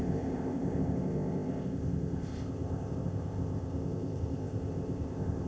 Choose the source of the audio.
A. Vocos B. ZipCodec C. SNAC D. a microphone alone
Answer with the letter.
B